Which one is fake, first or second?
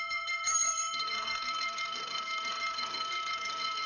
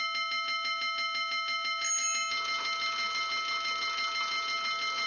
first